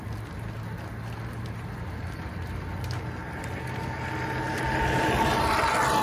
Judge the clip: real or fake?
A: real